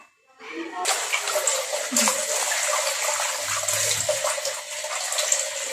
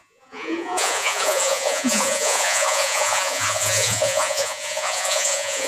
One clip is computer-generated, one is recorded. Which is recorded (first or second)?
first